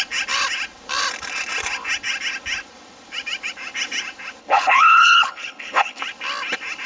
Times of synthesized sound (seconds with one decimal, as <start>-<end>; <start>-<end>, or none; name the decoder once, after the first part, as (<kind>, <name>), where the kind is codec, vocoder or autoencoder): 4.4-6.0 (codec, HILCodec)